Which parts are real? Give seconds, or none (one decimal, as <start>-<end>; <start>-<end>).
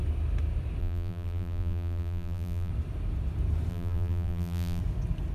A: 0.0-0.8; 2.7-3.7; 4.8-5.3